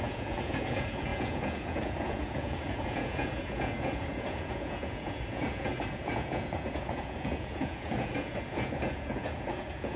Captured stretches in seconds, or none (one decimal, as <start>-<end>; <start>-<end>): none